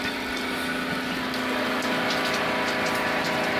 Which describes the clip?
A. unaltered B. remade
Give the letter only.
A